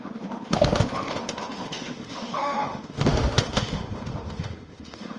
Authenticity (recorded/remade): remade